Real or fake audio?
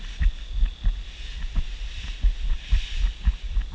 real